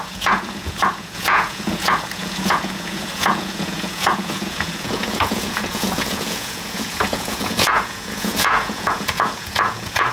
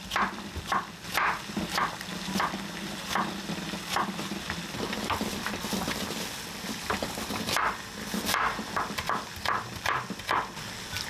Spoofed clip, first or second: first